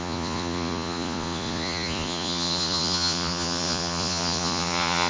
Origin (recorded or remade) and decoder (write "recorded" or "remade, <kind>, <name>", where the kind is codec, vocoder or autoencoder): remade, vocoder, Vocos